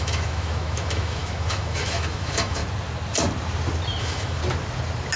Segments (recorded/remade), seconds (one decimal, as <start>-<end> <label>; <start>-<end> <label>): 0.0-2.6 remade; 2.6-4.0 recorded; 4.0-4.4 remade; 4.4-5.2 recorded